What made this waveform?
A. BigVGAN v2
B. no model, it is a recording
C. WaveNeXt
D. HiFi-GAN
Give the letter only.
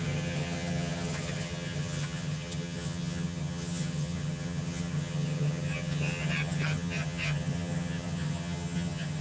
D